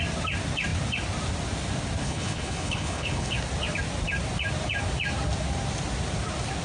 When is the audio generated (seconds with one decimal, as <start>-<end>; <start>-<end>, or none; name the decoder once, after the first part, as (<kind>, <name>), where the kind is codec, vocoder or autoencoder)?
2.0-3.3 (codec, HILCodec)